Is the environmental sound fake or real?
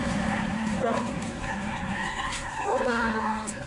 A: fake